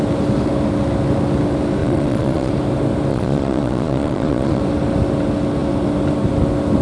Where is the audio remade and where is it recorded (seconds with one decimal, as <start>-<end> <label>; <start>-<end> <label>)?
0.0-1.8 recorded; 1.8-2.5 remade; 2.5-3.1 recorded; 3.1-4.6 remade; 4.6-6.8 recorded

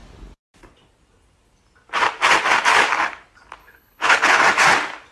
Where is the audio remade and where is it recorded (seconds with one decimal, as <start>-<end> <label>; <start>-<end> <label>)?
0.0-3.6 recorded; 3.6-4.4 remade; 4.4-5.1 recorded

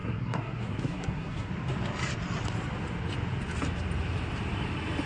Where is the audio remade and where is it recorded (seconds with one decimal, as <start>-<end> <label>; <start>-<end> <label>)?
0.0-1.5 remade; 1.5-5.1 recorded

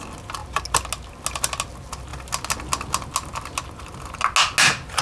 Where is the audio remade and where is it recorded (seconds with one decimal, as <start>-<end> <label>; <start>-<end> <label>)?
0.0-5.0 recorded

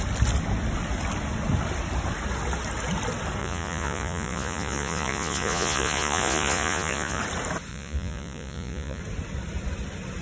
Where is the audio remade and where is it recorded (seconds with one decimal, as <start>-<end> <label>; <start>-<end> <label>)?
0.0-3.4 recorded; 3.4-7.2 remade; 7.2-7.7 recorded; 7.7-9.0 remade; 9.0-10.2 recorded

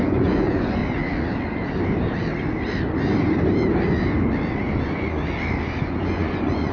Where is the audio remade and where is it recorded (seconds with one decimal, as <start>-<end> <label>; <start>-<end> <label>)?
0.0-0.8 remade; 0.8-4.8 recorded; 4.8-5.2 remade; 5.2-5.8 recorded; 5.8-6.7 remade

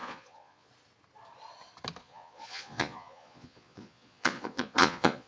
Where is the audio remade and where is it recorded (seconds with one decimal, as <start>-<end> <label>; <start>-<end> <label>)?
0.0-0.7 remade; 0.7-2.0 recorded; 2.0-5.3 remade